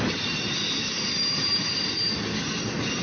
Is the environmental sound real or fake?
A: real